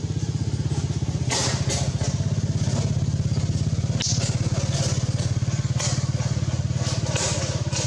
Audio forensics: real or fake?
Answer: real